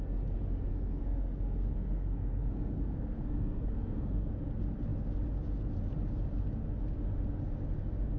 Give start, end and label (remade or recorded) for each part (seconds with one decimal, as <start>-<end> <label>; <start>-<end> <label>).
0.0-0.7 recorded; 0.7-4.3 remade; 4.3-8.2 recorded